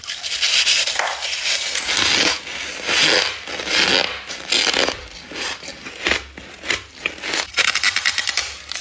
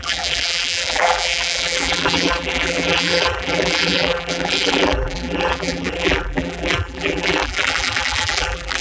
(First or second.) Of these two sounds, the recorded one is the first